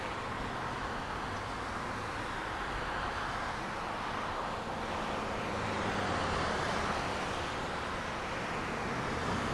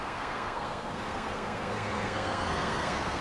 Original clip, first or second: first